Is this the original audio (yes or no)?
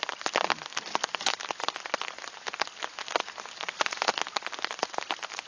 yes